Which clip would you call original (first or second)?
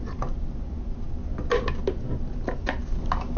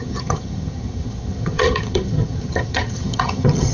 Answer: first